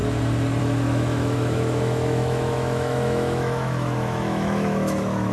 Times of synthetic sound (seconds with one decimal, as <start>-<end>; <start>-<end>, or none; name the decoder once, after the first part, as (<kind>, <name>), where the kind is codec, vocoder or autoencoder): 0.6-5.3 (autoencoder, DAC-VAE)